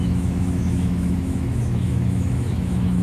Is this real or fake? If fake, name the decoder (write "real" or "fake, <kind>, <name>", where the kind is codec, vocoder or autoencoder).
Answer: fake, autoencoder, DAC-VAE